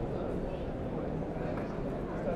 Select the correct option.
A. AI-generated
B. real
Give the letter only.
B